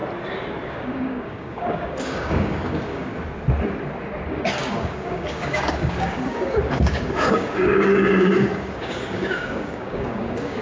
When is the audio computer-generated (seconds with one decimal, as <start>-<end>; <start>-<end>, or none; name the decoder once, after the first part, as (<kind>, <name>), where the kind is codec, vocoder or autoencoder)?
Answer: 0.7-3.1 (codec, DAC); 4.3-10.6